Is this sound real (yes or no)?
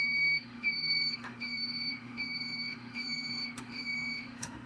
no